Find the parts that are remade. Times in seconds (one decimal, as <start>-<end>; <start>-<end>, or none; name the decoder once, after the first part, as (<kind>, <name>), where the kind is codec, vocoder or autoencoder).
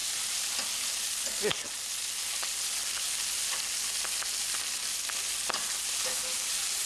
none